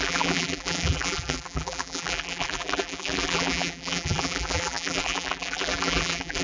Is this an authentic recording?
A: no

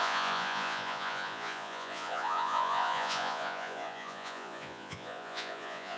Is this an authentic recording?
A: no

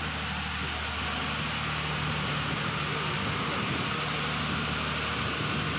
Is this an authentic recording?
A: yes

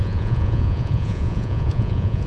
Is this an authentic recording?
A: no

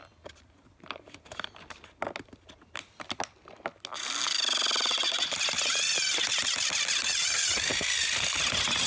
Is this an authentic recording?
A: yes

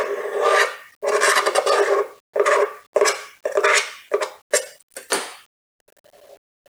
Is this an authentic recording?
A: yes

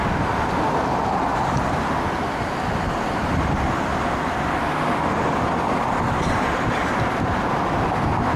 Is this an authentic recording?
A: yes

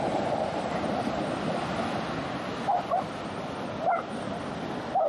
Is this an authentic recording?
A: yes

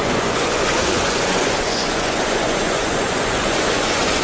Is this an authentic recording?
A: no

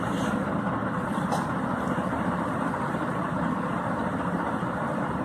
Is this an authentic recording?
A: yes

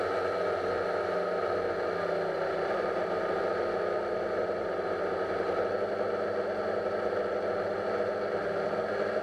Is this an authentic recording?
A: yes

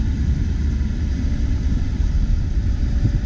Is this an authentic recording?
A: no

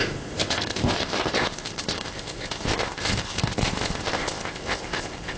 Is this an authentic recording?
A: no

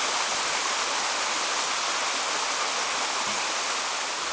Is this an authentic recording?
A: yes